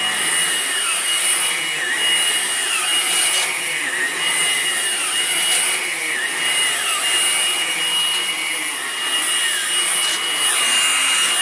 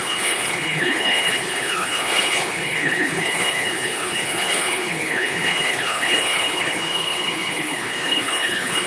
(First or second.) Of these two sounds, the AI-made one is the second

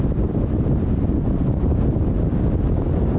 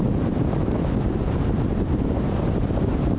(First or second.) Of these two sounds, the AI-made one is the second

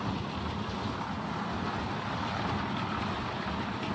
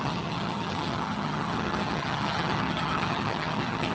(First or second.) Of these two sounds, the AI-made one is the second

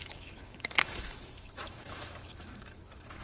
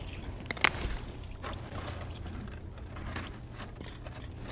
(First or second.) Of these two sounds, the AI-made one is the first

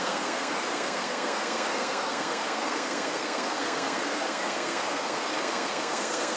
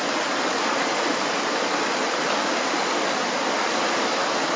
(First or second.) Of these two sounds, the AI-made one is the first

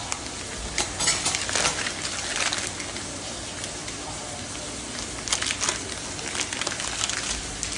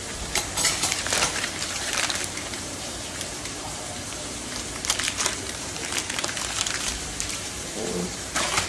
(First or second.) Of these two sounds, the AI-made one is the second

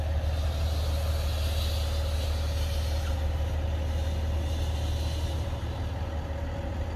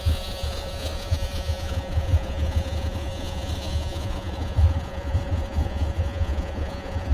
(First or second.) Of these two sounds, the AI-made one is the second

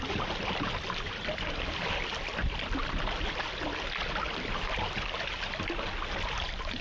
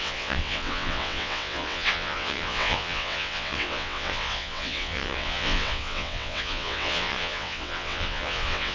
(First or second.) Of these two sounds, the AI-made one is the second